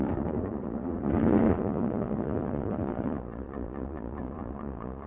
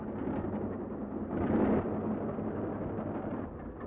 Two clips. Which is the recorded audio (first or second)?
second